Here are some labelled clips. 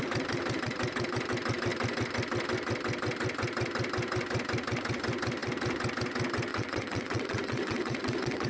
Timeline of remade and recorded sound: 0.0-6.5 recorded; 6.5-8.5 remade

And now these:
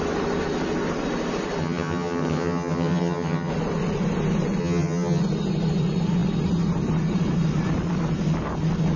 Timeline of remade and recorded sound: 0.0-1.6 recorded; 1.6-3.5 remade; 3.5-4.6 recorded; 4.6-5.2 remade; 5.2-9.0 recorded

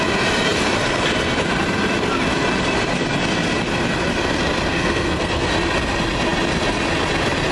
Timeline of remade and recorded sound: 0.0-4.7 recorded; 4.7-5.5 remade; 5.5-7.5 recorded

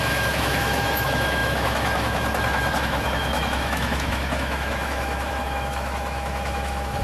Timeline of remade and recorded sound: 0.0-7.0 remade

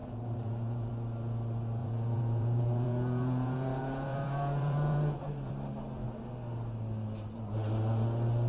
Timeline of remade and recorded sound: 0.0-0.9 remade; 0.9-1.8 recorded; 1.8-5.5 remade; 5.5-8.5 recorded